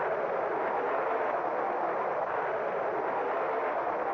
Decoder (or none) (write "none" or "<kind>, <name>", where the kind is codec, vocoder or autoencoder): none